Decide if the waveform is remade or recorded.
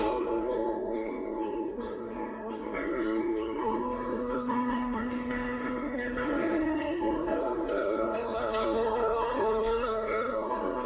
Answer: remade